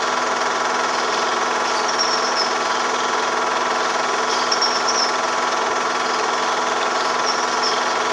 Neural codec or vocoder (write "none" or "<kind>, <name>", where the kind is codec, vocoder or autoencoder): none